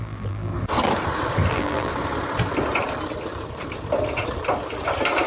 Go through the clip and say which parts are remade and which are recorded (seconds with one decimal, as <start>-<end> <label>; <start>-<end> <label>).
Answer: 0.0-0.5 remade; 0.5-1.5 recorded; 1.5-1.9 remade; 1.9-5.3 recorded